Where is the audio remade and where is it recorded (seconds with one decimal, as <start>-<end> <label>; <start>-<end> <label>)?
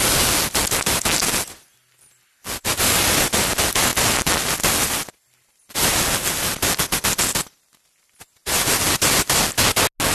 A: 0.0-10.1 recorded